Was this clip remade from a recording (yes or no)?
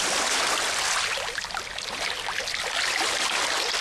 no